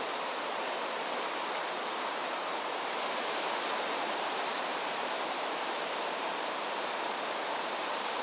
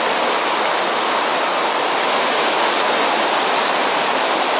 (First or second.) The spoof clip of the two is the first